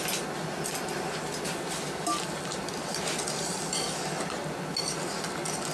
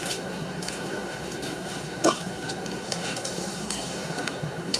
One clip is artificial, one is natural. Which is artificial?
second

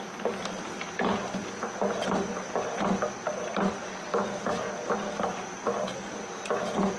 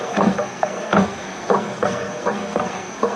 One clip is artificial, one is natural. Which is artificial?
second